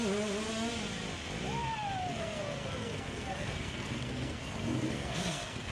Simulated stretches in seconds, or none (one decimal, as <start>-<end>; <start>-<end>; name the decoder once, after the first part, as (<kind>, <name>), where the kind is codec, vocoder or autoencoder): 2.1-5.7 (codec, SNAC)